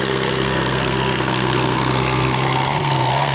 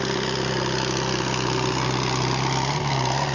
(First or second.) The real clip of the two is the second